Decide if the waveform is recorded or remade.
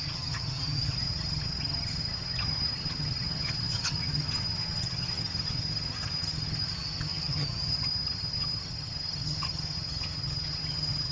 remade